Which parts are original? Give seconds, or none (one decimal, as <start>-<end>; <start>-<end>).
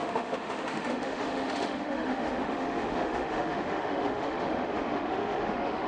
none